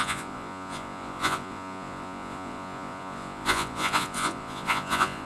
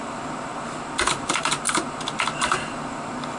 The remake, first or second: first